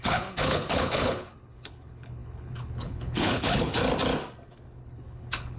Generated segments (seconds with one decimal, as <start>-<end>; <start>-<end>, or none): 0.0-3.7; 4.8-5.6